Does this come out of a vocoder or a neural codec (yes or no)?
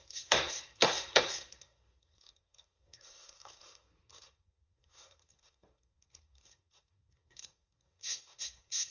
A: yes